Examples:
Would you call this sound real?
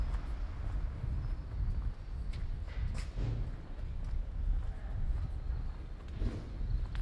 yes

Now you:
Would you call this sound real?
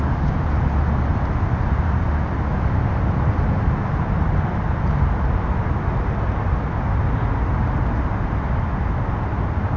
yes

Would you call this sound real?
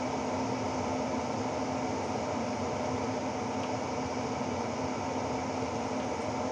yes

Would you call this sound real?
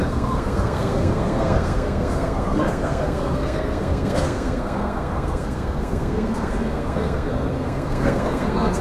no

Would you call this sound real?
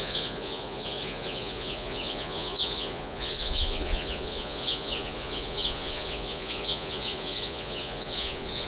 no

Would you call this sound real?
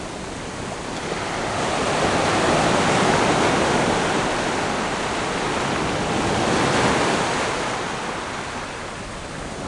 yes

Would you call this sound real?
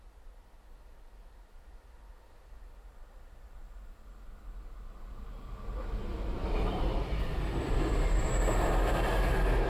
yes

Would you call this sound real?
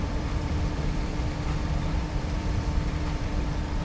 no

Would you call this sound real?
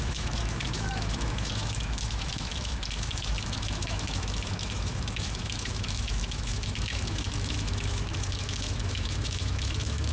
no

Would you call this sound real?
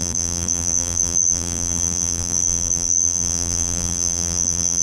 no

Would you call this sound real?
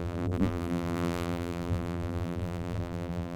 no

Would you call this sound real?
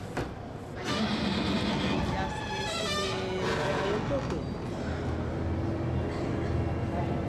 yes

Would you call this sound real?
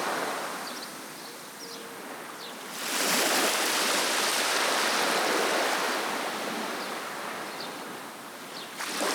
yes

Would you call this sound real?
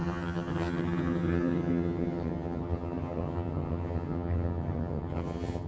no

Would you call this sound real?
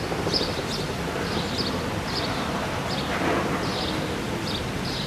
yes